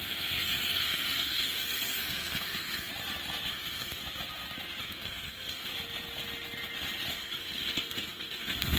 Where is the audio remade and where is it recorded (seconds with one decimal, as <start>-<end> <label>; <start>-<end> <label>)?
0.0-2.9 remade; 2.9-3.5 recorded; 3.5-4.0 remade; 4.0-4.8 recorded; 4.8-5.7 remade; 5.7-7.1 recorded; 7.1-8.8 remade